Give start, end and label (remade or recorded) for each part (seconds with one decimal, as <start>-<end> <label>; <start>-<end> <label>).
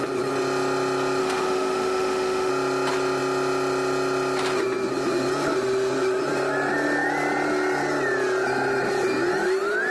0.0-1.2 recorded; 1.2-2.5 remade; 2.5-9.9 recorded